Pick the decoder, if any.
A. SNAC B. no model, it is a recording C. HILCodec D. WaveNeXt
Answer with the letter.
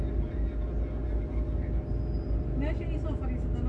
B